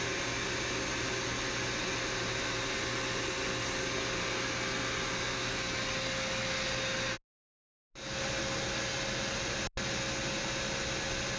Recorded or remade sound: recorded